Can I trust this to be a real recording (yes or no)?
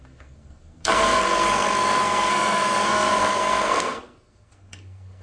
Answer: no